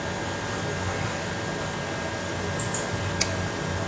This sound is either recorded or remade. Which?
recorded